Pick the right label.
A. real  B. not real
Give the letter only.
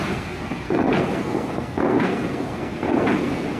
B